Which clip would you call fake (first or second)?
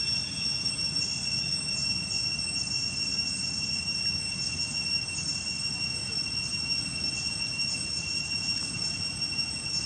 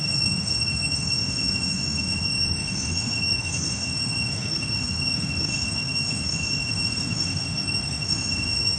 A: second